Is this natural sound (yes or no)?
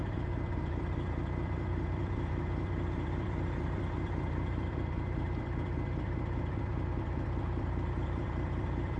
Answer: no